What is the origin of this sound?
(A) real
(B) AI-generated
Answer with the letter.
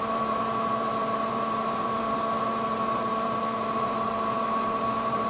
B